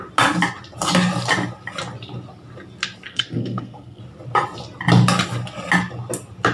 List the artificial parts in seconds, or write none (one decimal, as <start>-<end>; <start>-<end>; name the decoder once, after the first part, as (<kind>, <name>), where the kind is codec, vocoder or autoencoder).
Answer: 3.1-4.0 (codec, SNAC)